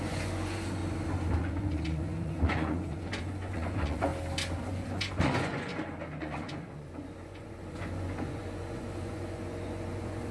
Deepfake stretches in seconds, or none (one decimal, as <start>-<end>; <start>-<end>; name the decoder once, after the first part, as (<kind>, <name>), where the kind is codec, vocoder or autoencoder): 0.0-0.8 (vocoder, Vocos); 1.4-4.1; 4.7-5.7; 6.2-10.3